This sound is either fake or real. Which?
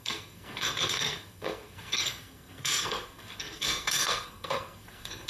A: fake